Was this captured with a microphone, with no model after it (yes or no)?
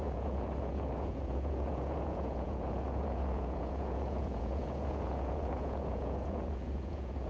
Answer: no